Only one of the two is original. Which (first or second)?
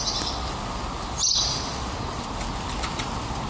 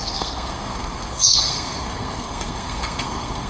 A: first